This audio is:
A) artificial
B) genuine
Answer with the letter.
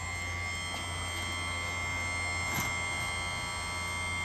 B